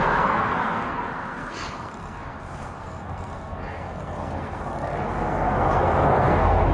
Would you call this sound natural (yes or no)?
no